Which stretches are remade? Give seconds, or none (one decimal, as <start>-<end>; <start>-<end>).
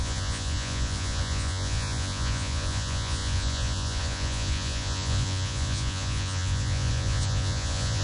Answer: 0.0-8.0